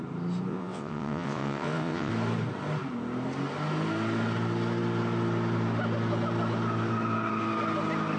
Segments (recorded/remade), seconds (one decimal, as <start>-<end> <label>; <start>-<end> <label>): 0.0-0.5 recorded; 0.5-2.1 remade; 2.1-8.2 recorded